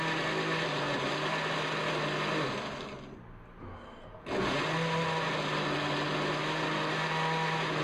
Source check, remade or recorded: recorded